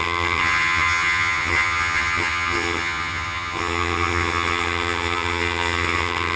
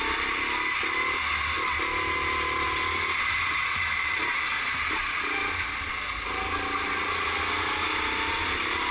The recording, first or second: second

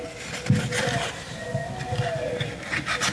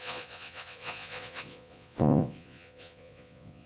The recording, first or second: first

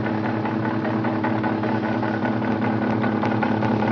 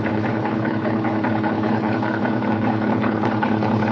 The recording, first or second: first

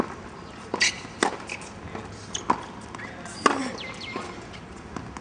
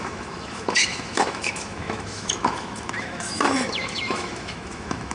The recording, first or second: first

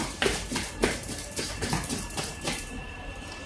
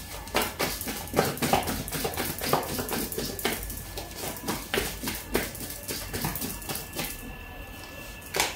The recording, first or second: second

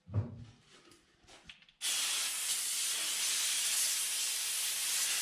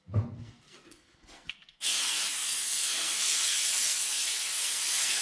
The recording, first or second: first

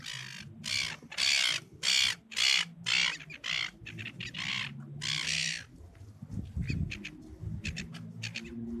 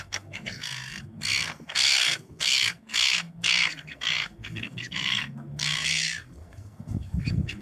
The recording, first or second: first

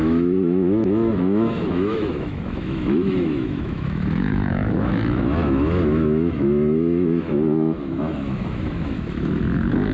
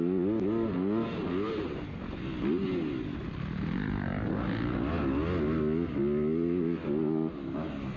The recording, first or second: second